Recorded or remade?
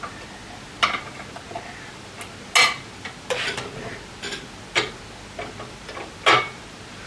recorded